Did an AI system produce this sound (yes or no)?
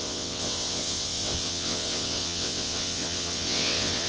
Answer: yes